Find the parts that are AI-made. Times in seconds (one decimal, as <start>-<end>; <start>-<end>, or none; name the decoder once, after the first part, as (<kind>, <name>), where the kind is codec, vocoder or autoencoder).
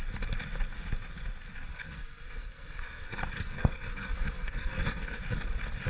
1.7-5.2 (codec, SNAC)